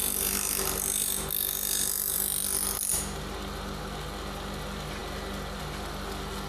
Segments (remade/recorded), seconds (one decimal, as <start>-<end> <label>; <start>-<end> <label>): 0.0-6.5 recorded